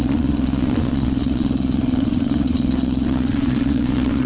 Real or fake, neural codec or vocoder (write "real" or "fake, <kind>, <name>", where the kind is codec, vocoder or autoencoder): fake, vocoder, Vocos